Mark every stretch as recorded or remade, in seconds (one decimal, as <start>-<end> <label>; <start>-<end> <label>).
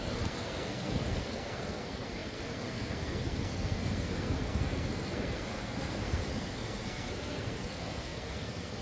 0.0-8.8 remade